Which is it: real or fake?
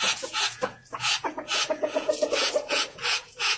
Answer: fake